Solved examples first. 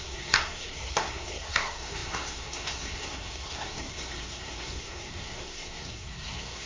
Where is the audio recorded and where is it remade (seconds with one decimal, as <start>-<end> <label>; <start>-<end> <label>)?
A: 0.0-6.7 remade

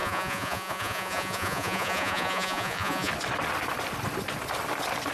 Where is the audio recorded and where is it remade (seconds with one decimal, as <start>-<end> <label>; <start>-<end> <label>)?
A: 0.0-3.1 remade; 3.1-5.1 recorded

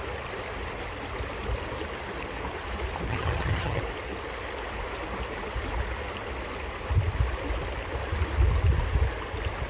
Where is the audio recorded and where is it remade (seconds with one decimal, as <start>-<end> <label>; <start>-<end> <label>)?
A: 0.0-3.1 recorded; 3.1-3.8 remade; 3.8-9.7 recorded

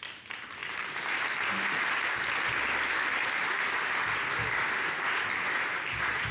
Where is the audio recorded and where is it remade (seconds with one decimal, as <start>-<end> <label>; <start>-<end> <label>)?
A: 0.0-0.6 recorded; 0.6-1.4 remade; 1.4-6.3 recorded